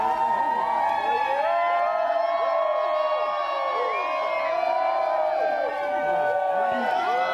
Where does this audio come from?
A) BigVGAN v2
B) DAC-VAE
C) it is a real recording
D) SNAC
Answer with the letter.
C